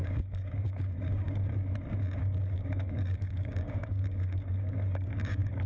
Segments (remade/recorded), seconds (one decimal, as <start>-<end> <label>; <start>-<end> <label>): 0.0-1.5 remade; 1.5-2.2 recorded; 2.2-5.7 remade